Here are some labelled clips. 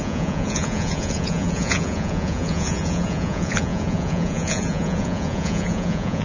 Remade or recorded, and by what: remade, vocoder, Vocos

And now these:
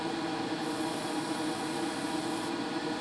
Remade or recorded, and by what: recorded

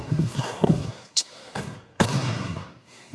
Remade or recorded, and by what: remade, codec, SNAC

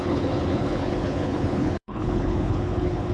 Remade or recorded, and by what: remade, codec, HILCodec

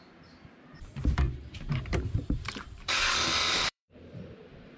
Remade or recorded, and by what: remade, vocoder, BigVGAN v2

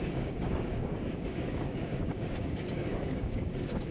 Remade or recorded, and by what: remade, codec, DAC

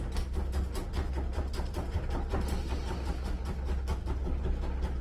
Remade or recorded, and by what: recorded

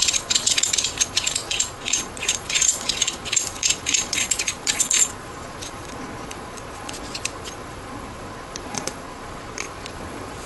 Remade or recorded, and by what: remade, vocoder, Vocos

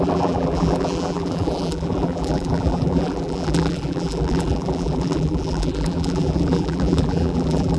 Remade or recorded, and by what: remade, vocoder, BigVGAN v2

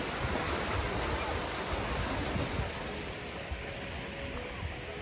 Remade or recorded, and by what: recorded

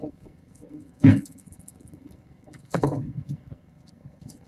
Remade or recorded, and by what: remade, codec, SNAC